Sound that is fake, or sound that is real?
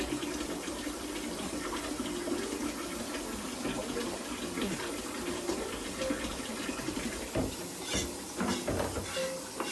real